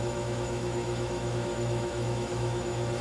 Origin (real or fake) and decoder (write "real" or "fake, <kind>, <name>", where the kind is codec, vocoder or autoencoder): fake, autoencoder, DAC-VAE